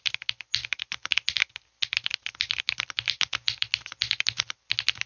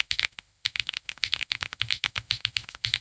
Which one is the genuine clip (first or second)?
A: first